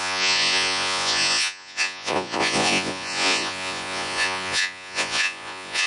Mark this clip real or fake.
fake